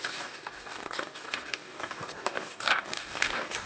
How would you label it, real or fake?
fake